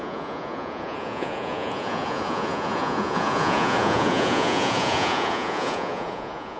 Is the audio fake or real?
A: fake